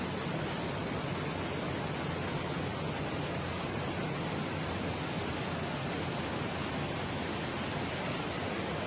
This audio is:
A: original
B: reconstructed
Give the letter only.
A